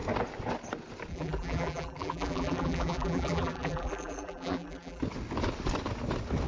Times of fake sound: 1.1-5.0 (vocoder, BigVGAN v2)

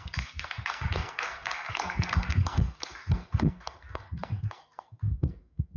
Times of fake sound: 0.0-5.8 (codec, SNAC)

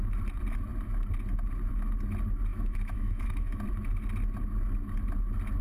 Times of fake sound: 2.5-3.6 (autoencoder, DAC-VAE)

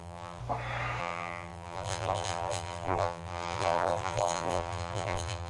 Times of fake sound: 0.0-0.4 (vocoder, BigVGAN v2); 1.0-5.5